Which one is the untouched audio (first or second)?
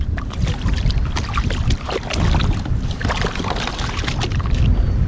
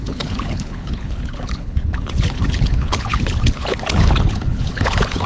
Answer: first